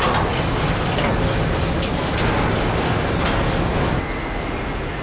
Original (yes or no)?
yes